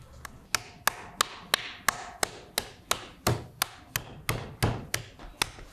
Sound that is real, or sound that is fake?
real